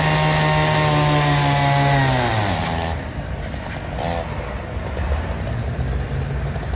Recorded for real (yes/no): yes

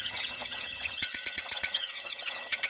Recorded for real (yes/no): no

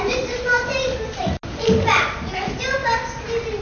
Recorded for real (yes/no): yes